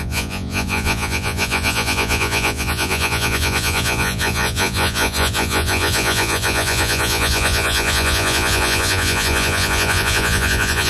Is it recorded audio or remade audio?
remade